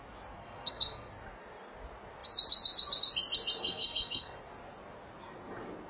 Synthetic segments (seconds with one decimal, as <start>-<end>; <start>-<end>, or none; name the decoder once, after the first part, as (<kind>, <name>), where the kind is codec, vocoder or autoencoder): 0.4-1.1 (codec, SNAC); 3.6-4.4